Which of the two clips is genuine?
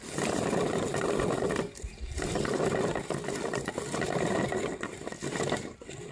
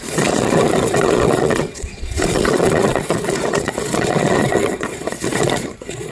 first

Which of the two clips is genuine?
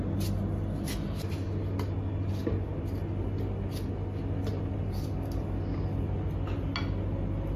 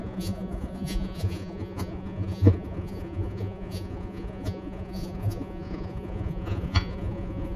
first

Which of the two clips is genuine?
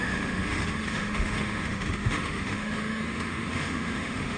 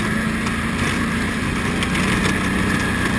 second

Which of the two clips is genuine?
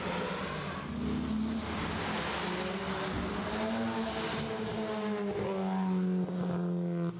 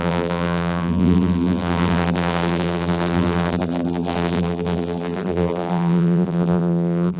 first